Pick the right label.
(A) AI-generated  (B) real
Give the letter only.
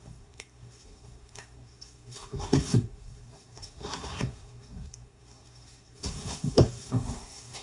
A